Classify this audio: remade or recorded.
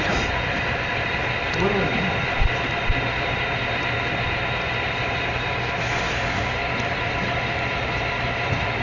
remade